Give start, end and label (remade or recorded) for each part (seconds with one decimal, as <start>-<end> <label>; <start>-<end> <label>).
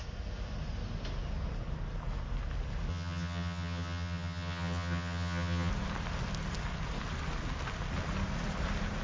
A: 0.0-2.9 recorded; 2.9-5.7 remade; 5.7-9.0 recorded